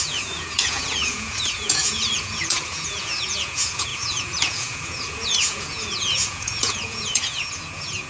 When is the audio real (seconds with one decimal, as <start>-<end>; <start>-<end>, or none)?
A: none